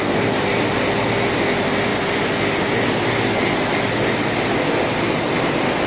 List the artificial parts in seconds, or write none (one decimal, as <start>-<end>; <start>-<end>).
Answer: none